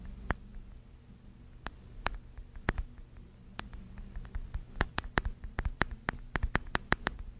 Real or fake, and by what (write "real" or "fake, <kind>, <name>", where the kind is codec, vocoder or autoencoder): real